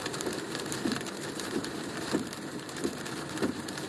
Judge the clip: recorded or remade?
remade